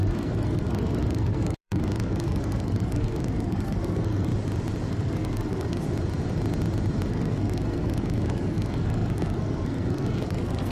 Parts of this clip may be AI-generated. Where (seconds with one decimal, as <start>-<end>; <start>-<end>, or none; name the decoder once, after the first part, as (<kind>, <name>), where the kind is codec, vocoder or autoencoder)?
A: 0.0-4.3 (codec, SNAC); 4.9-5.8; 7.1-10.7